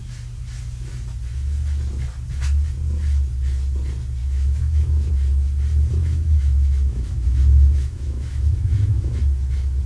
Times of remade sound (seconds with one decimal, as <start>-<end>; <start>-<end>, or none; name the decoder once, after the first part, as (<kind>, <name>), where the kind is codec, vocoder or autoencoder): 4.2-5.1 (autoencoder, DAC-VAE); 6.0-9.2